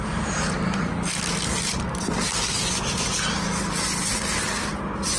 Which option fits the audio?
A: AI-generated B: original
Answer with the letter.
B